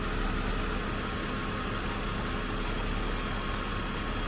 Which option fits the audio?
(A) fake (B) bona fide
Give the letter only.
B